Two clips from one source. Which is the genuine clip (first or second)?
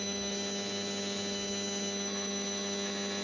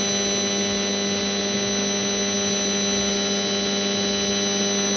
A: second